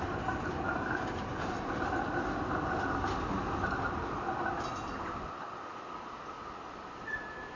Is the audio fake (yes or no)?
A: no